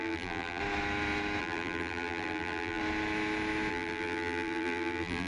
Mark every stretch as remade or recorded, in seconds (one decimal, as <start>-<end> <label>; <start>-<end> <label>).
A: 0.0-0.6 remade; 0.6-1.4 recorded; 1.4-2.8 remade; 2.8-3.7 recorded; 3.7-5.3 remade